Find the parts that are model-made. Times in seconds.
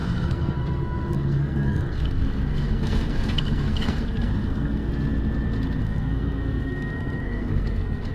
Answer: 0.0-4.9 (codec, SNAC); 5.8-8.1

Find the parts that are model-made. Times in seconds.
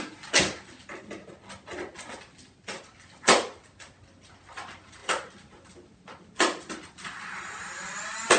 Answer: none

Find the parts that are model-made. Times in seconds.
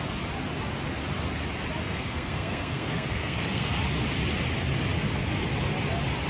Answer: 1.8-3.8 (codec, SNAC)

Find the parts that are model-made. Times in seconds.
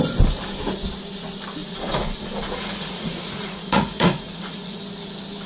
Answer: 1.6-4.8 (vocoder, Vocos)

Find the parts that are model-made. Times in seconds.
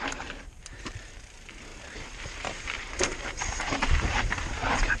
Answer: 0.0-5.0 (vocoder, BigVGAN v2)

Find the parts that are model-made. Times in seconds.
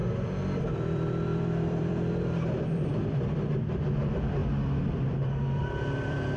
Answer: 0.0-6.4 (vocoder, BigVGAN v2)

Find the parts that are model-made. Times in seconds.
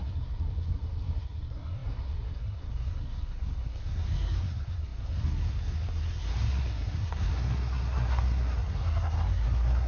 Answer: 0.0-9.9 (codec, SNAC)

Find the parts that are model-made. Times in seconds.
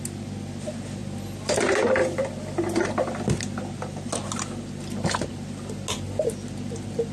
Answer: none